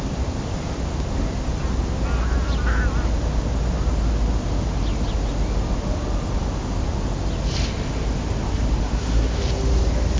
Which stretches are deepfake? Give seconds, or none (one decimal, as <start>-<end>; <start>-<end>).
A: 8.8-9.4